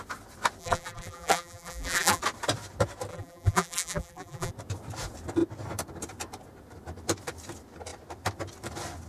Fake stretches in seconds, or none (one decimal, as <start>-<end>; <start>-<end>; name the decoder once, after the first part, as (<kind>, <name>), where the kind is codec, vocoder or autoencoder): 0.6-2.2 (vocoder, BigVGAN v2); 3.1-4.5